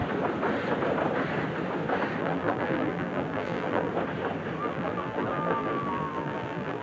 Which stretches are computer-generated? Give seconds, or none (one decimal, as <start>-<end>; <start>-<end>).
2.2-3.9; 4.6-6.8